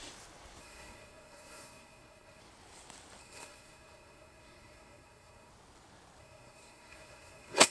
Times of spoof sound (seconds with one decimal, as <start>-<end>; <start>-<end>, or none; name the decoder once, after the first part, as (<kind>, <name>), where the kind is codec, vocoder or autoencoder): 0.6-2.4 (codec, SNAC); 3.2-5.5; 6.2-7.7